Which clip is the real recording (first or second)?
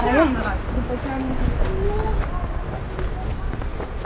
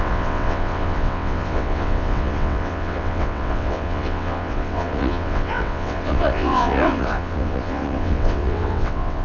first